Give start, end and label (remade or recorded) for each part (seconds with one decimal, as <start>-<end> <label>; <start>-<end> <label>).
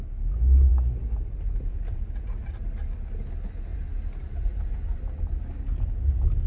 0.0-6.5 recorded